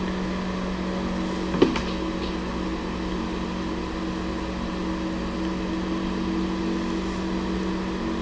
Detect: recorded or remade recorded